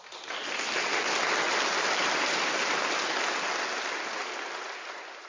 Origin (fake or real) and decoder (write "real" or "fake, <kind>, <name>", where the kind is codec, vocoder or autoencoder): real